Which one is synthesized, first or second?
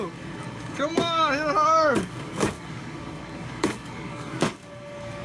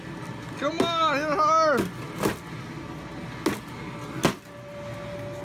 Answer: first